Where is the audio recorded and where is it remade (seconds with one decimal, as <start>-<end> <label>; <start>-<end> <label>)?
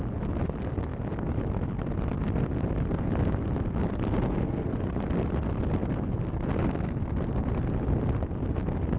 0.0-4.3 recorded; 4.3-4.8 remade; 4.8-9.0 recorded